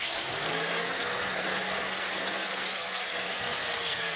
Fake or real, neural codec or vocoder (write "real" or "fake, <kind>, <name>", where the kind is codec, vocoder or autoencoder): fake, codec, SNAC